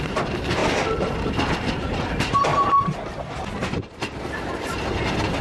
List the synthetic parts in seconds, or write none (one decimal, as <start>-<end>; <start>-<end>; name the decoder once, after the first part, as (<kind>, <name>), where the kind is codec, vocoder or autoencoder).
0.6-1.2 (vocoder, BigVGAN v2); 2.5-4.6